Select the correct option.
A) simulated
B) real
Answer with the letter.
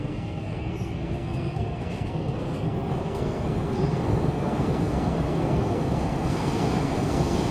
A